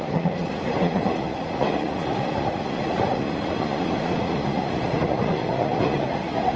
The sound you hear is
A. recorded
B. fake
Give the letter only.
B